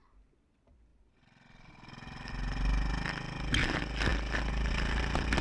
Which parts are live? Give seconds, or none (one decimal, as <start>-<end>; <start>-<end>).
0.0-5.4